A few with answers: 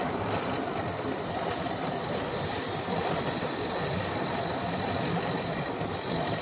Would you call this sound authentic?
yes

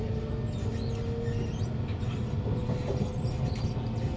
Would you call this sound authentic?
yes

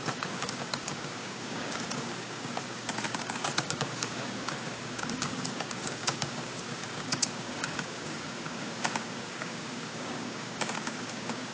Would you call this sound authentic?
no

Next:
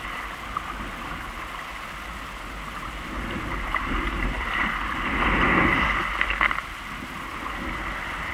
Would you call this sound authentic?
yes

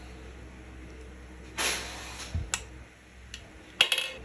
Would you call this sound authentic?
yes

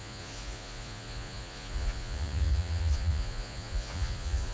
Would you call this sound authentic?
no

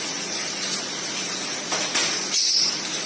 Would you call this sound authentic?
no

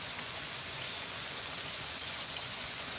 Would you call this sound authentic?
no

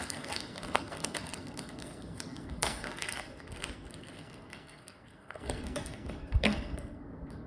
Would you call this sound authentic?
no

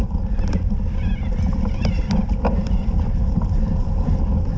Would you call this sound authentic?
yes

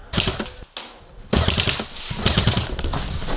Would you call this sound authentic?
yes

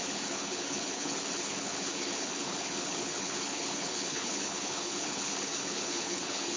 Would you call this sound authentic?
no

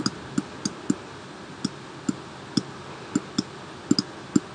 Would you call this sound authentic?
yes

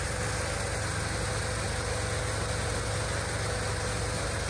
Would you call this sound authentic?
yes